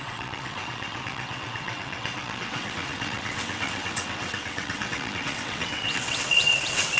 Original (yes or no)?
no